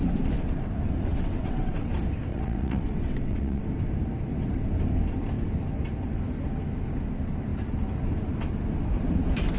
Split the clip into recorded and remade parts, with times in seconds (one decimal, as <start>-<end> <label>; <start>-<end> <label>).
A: 0.0-1.1 recorded; 1.1-1.9 remade; 1.9-2.3 recorded; 2.3-3.6 remade; 3.6-9.6 recorded

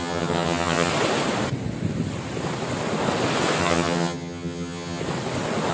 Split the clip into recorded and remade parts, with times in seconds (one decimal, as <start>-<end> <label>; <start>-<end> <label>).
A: 0.0-0.9 remade; 0.9-3.6 recorded; 3.6-5.0 remade; 5.0-5.7 recorded

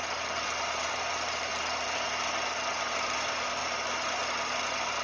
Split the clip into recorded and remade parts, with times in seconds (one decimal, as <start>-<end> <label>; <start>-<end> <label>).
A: 0.0-1.5 remade; 1.5-2.7 recorded; 2.7-5.0 remade

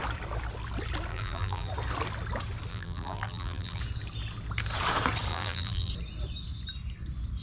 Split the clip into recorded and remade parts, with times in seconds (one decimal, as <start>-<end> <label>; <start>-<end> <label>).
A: 0.0-1.1 recorded; 1.1-1.7 remade; 1.7-2.7 recorded; 2.7-3.8 remade; 3.8-5.3 recorded; 5.3-5.9 remade; 5.9-7.4 recorded

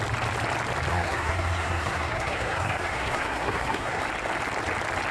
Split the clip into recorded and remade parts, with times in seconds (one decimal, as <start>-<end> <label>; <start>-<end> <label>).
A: 0.0-0.9 recorded; 0.9-4.0 remade; 4.0-5.1 recorded

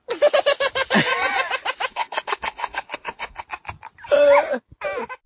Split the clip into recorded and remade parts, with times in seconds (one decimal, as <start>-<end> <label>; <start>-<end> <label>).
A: 0.0-1.9 recorded; 1.9-3.4 remade; 3.4-5.3 recorded

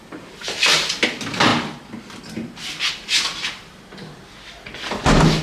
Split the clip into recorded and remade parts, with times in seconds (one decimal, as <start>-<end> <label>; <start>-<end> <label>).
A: 0.0-0.4 recorded; 0.4-0.9 remade; 0.9-5.4 recorded

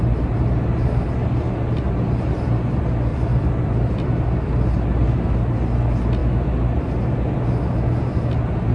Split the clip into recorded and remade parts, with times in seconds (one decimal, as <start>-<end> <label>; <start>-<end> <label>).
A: 0.0-3.1 recorded; 3.1-5.5 remade; 5.5-8.7 recorded